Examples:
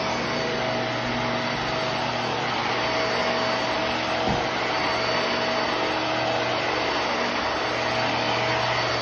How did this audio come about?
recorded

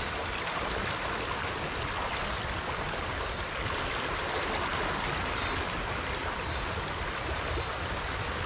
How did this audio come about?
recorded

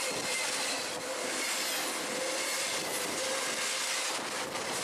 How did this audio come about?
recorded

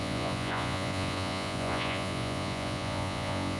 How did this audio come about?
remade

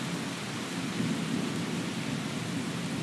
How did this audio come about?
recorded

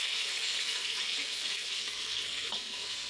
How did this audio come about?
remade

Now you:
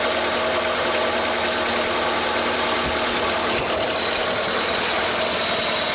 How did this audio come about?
recorded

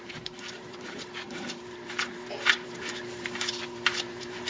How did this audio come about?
remade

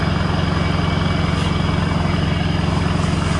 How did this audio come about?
recorded